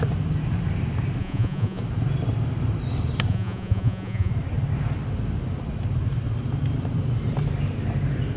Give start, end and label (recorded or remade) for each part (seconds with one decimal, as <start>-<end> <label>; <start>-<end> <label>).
0.0-1.2 recorded; 1.2-1.8 remade; 1.8-3.3 recorded; 3.3-4.3 remade; 4.3-8.4 recorded